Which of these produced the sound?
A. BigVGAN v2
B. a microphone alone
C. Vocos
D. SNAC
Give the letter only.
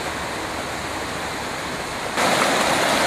B